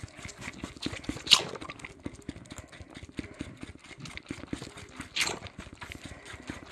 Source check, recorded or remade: recorded